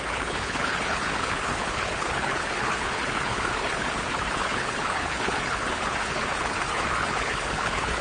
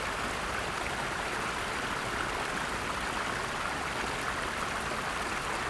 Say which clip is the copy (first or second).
first